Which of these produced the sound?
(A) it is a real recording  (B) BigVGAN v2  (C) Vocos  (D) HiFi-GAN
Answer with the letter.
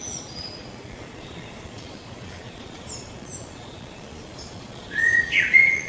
C